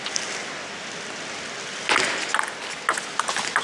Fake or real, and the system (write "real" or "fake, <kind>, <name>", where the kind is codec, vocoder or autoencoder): real